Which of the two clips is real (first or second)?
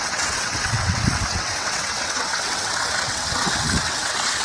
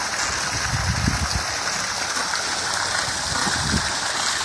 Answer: second